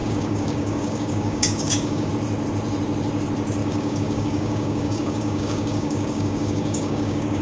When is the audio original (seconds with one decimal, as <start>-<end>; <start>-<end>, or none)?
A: 2.1-3.6